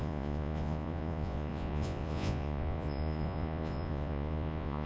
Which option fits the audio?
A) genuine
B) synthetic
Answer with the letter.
B